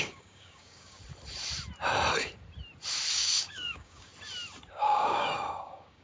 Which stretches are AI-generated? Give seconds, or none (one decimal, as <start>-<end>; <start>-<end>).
0.0-1.0; 3.1-4.1; 4.7-6.0